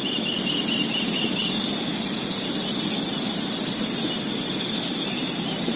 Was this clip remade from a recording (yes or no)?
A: no